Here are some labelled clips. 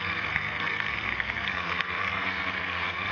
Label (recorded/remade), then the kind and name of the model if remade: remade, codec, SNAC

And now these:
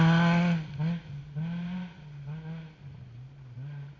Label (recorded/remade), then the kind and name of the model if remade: recorded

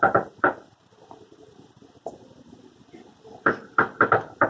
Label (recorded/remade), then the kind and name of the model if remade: remade, vocoder, BigVGAN v2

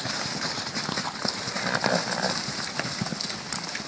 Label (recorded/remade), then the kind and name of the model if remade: recorded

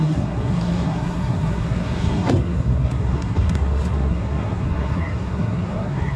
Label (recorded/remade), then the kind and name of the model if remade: remade, codec, SNAC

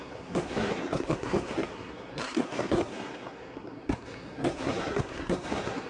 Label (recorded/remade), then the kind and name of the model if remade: remade, codec, SNAC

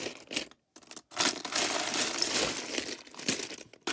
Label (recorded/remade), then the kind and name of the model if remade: recorded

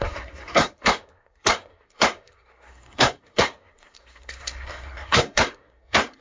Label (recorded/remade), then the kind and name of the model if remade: remade, codec, SNAC